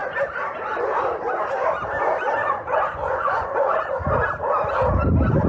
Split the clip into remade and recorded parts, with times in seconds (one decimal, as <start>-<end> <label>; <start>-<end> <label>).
0.0-2.4 recorded; 2.4-4.0 remade; 4.0-5.5 recorded